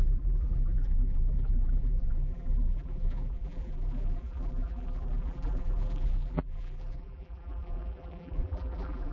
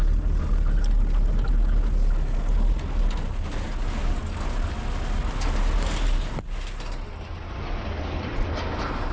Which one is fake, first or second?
first